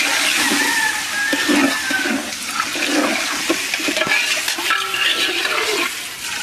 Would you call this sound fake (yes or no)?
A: no